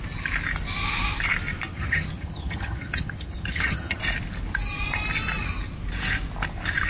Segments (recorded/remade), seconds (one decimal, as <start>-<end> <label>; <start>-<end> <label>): 0.0-1.7 recorded; 1.7-4.0 remade; 4.0-6.9 recorded

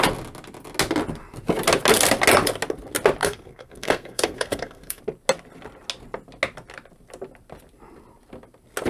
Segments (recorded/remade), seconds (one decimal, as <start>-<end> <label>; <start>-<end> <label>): 0.0-3.2 recorded; 3.2-5.0 remade; 5.0-8.9 recorded

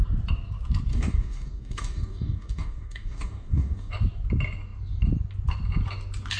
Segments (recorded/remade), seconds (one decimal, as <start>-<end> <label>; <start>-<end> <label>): 0.0-0.9 recorded; 0.9-3.9 remade; 3.9-6.4 recorded

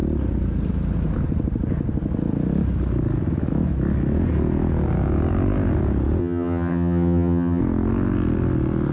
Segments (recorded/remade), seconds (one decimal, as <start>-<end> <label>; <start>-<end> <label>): 0.0-6.2 recorded; 6.2-7.6 remade; 7.6-8.9 recorded

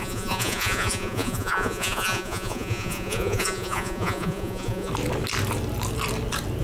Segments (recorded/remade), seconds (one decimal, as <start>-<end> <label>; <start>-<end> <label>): 0.0-4.9 remade; 4.9-6.6 recorded

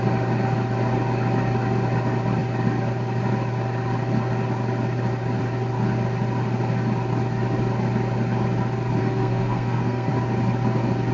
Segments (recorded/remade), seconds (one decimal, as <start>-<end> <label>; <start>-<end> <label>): 0.0-9.0 recorded; 9.0-10.1 remade; 10.1-11.1 recorded

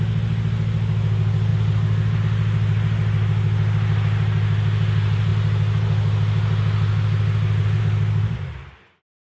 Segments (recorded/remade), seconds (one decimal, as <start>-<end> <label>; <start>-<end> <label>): 0.0-9.3 recorded